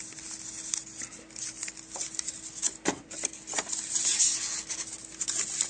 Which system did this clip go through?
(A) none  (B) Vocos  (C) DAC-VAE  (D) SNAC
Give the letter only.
A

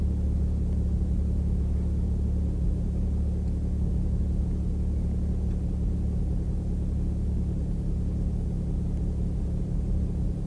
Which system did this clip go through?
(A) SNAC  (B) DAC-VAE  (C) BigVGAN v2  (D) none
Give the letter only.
D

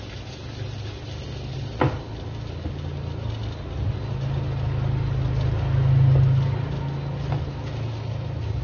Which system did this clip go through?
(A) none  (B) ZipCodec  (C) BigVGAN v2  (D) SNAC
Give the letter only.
A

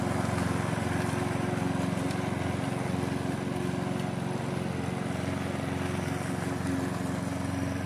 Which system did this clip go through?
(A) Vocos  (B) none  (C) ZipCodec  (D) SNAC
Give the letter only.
B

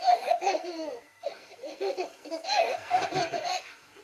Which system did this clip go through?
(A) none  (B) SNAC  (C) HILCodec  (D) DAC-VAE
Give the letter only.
B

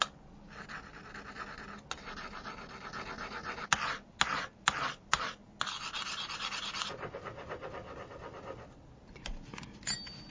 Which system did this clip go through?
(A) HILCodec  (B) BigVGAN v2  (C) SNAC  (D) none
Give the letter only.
D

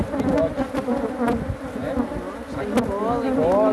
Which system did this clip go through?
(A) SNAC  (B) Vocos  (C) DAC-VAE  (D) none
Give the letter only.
D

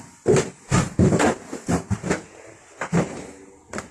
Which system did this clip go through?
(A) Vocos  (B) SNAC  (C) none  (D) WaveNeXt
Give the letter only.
C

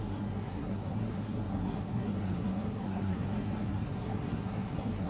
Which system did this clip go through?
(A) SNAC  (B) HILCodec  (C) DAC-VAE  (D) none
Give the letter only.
A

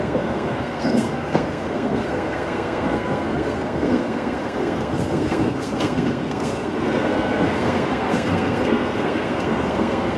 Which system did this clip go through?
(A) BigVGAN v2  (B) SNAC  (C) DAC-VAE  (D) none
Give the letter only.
B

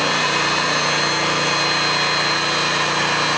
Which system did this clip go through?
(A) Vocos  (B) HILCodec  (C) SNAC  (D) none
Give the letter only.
D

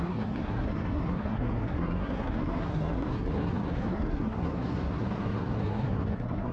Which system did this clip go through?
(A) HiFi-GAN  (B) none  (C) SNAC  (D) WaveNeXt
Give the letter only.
C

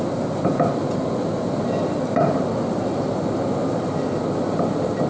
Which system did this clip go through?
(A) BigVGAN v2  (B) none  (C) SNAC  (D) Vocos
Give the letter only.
B